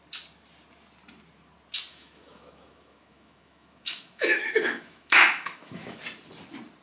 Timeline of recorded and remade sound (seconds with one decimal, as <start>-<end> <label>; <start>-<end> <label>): 0.0-1.9 recorded; 1.9-6.0 remade; 6.0-6.8 recorded